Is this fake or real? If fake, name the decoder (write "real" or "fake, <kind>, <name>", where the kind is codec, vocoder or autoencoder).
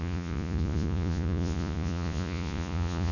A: fake, vocoder, Vocos